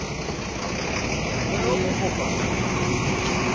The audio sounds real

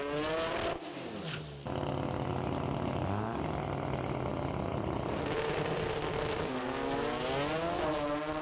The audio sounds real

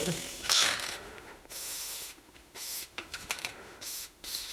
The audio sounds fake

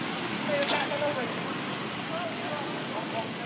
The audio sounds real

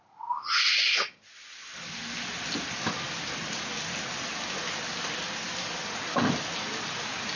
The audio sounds real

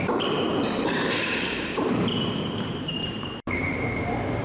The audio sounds fake